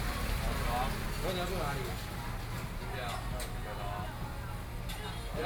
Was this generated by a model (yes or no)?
no